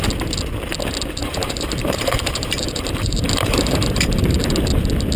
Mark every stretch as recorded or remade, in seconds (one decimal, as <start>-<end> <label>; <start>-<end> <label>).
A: 0.0-1.4 recorded; 1.4-4.5 remade; 4.5-5.2 recorded